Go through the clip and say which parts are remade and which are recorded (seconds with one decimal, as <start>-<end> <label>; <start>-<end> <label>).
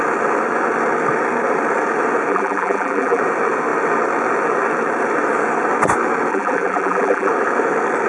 0.0-2.3 recorded; 2.3-3.2 remade; 3.2-6.3 recorded; 6.3-7.3 remade; 7.3-8.1 recorded